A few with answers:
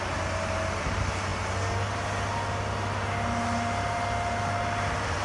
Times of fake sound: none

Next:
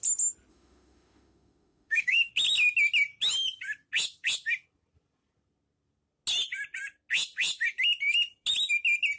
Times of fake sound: 0.5-2.3 (autoencoder, DAC-VAE)

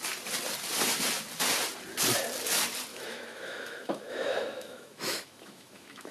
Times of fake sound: 2.9-6.1 (autoencoder, DAC-VAE)

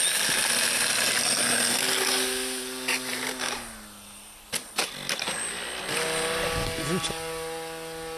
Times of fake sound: none

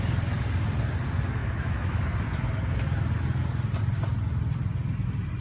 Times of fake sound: 1.4-2.0 (autoencoder, DAC-VAE)

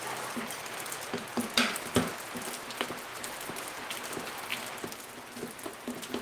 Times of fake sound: none

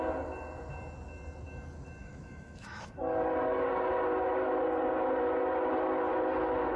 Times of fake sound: 2.0-3.0 (autoencoder, DAC-VAE)

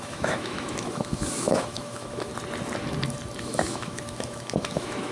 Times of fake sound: 0.0-2.3 (autoencoder, DAC-VAE); 3.4-5.1